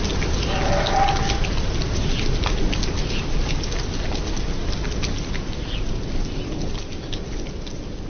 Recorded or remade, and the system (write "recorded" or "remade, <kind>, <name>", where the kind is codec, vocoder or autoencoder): recorded